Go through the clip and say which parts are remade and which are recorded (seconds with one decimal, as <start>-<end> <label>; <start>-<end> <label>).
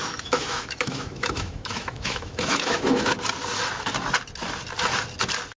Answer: 0.0-3.1 remade; 3.1-5.6 recorded